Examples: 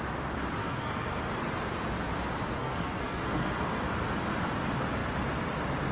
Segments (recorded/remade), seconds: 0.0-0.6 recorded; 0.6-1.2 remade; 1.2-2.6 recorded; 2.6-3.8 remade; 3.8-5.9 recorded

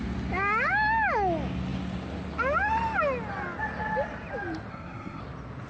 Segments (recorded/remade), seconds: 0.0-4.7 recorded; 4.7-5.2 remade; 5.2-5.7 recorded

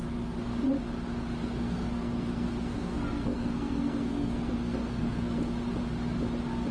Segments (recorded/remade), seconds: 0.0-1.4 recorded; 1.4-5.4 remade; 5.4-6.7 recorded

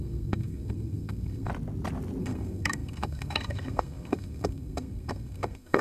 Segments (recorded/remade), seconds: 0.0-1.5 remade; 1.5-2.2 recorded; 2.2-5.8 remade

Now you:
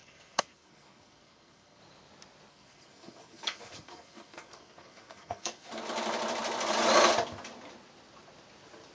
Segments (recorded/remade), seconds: 0.0-1.8 remade; 1.8-2.5 recorded; 2.5-5.7 remade; 5.7-8.9 recorded